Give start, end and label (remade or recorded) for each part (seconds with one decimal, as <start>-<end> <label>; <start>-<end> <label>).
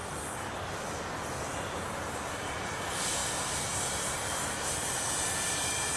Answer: 0.0-6.0 recorded